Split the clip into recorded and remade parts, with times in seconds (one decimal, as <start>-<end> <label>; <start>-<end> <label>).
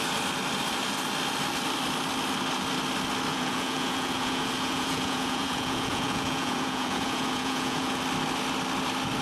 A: 0.0-3.3 recorded; 3.3-8.0 remade; 8.0-9.2 recorded